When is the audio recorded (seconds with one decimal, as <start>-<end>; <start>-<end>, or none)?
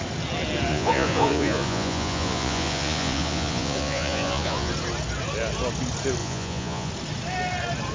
0.0-0.7; 4.7-6.2; 6.9-7.9